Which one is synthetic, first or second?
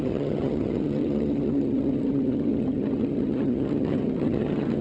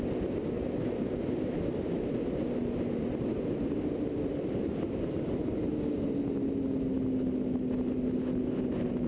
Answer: first